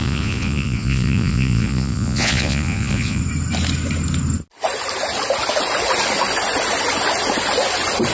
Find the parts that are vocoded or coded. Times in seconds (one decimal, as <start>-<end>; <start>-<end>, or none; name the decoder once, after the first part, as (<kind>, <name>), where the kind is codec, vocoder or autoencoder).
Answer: 0.0-3.2 (vocoder, Vocos)